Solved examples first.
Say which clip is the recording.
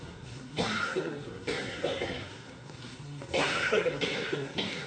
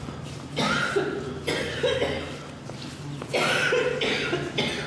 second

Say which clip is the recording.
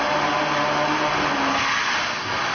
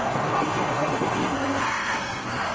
first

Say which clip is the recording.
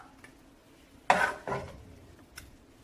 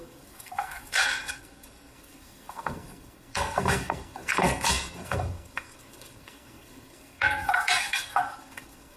first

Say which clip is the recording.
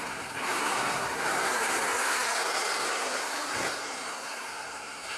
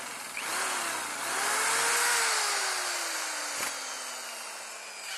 second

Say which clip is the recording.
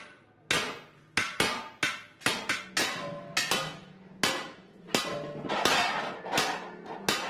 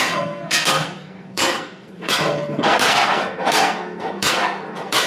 first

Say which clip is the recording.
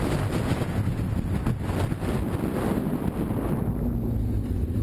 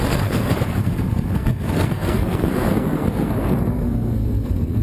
first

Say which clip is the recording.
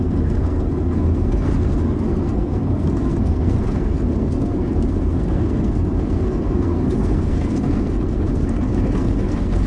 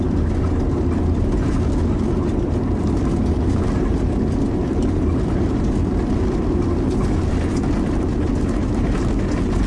second